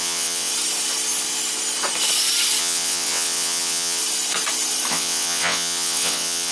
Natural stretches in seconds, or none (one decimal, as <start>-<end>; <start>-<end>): 0.5-2.6; 4.0-4.9